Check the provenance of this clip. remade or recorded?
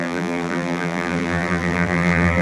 remade